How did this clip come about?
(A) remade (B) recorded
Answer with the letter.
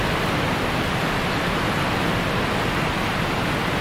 B